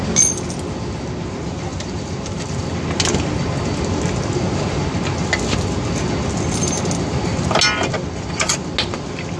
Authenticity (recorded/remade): recorded